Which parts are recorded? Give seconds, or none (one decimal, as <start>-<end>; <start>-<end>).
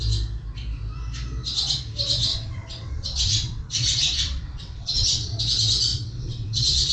0.0-2.3; 5.4-5.9